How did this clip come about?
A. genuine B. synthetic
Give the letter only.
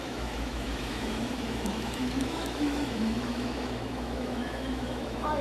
B